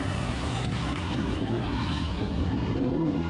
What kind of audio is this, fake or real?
fake